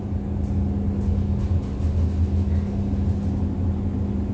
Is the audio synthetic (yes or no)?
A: no